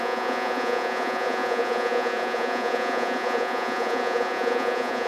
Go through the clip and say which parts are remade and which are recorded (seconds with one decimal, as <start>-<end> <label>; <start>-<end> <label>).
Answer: 0.0-5.1 remade